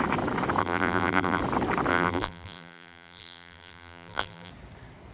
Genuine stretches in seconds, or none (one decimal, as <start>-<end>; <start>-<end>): 0.0-0.6; 1.4-1.9; 4.5-5.1